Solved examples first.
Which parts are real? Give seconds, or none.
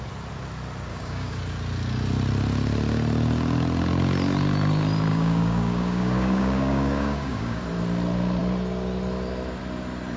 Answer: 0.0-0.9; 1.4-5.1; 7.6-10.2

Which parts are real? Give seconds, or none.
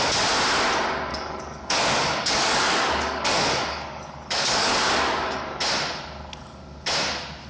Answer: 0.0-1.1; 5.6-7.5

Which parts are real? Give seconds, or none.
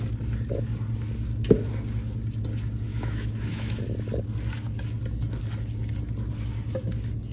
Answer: 0.0-2.9; 3.8-7.3